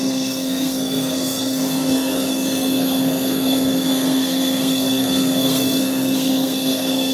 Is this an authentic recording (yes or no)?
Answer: no